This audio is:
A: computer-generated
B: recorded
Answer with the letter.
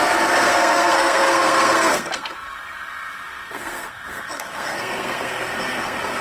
A